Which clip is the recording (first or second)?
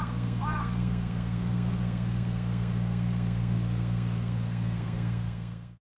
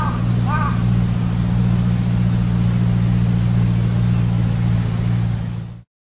second